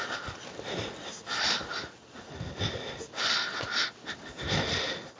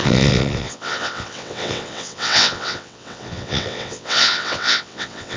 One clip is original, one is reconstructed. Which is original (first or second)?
first